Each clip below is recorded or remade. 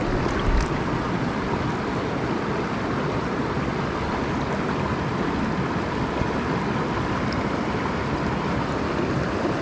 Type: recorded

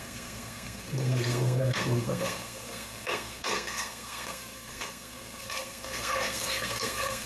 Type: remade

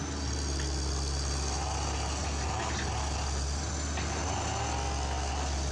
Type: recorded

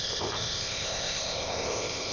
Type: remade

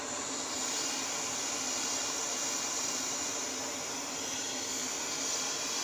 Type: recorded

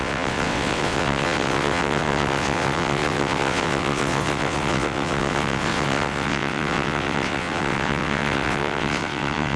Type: remade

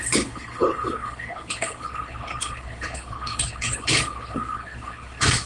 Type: remade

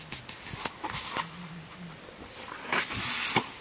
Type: recorded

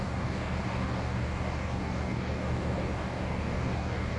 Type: remade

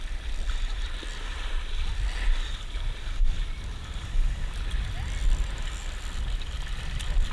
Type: recorded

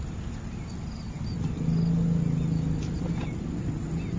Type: recorded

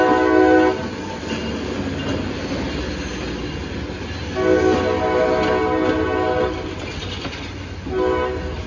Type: recorded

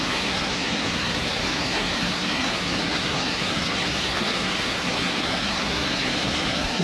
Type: remade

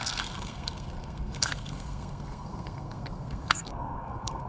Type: remade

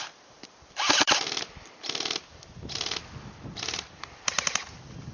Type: remade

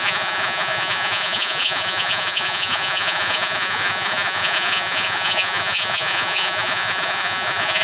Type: remade